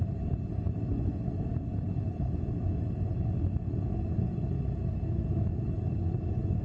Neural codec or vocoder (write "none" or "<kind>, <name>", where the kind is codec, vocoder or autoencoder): none